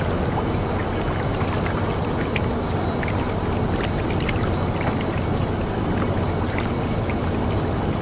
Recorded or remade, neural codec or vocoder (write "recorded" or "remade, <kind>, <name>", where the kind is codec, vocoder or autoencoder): recorded